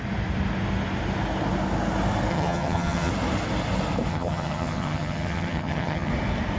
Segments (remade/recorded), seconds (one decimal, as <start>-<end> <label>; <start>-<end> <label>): 0.0-2.3 recorded; 2.3-3.1 remade; 3.1-4.1 recorded; 4.1-6.1 remade; 6.1-6.6 recorded